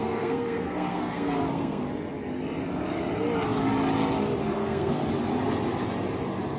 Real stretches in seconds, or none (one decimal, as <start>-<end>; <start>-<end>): 1.8-4.4; 5.0-6.6